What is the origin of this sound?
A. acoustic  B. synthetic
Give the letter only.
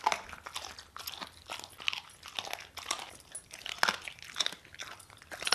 A